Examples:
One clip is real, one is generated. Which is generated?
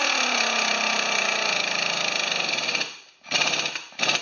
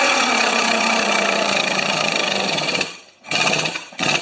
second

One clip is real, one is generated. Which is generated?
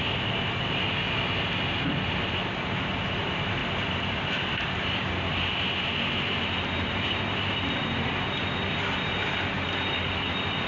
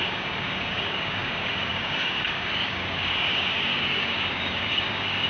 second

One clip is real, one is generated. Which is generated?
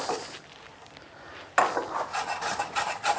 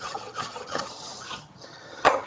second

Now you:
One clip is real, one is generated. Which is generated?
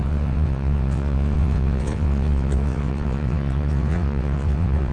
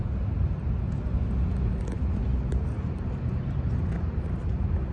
first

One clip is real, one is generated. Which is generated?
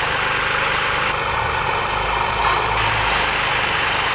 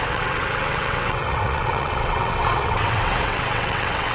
second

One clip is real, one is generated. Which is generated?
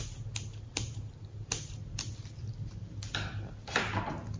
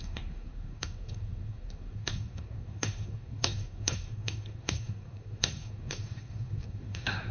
second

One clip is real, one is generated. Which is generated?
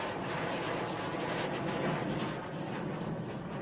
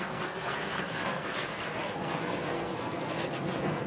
second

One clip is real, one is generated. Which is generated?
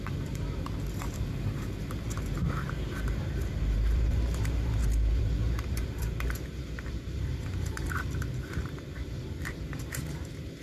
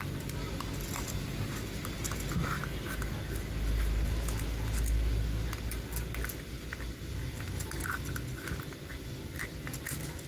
first